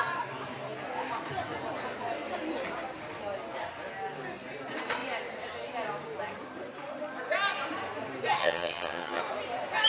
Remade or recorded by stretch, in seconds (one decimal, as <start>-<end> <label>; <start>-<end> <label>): 0.0-8.4 recorded; 8.4-9.2 remade; 9.2-9.9 recorded